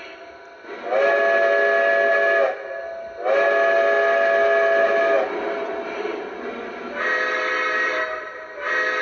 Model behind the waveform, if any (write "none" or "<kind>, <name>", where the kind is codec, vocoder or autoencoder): none